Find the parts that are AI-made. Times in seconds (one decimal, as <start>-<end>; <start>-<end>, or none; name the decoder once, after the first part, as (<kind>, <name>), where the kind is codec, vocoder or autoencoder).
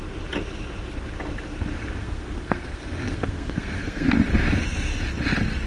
2.0-4.1 (codec, SNAC)